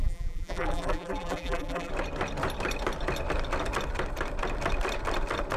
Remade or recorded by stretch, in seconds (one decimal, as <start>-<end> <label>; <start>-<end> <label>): 0.0-1.9 remade; 1.9-5.6 recorded